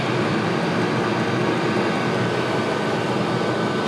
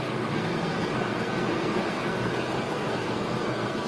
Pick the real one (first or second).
first